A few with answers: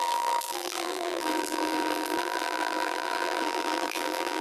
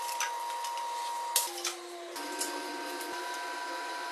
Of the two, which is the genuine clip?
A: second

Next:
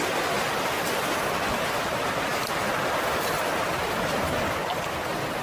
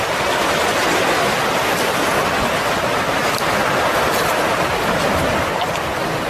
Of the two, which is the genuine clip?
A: second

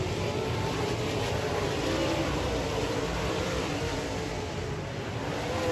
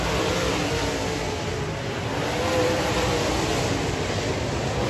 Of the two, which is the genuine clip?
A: second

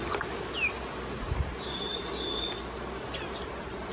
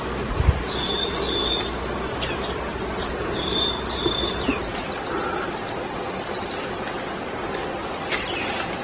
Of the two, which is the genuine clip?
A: first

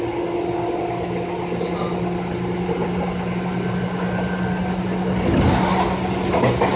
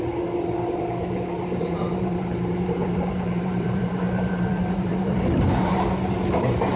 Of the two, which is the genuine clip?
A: first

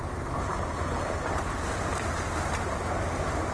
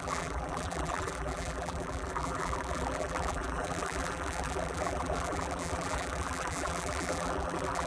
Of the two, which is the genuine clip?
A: first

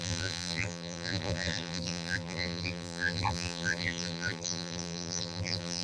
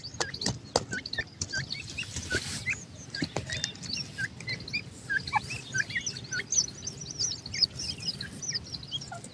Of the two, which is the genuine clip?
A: second